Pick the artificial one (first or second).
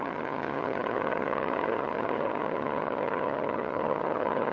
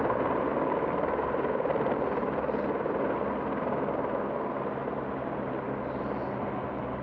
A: first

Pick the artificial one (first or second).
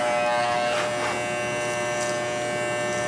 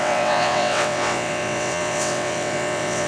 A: second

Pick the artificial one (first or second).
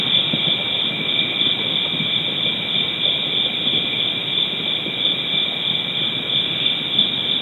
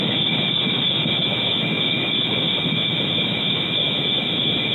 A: second